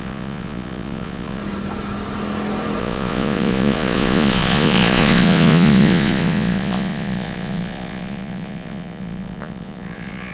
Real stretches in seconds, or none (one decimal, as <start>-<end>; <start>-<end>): 1.4-2.8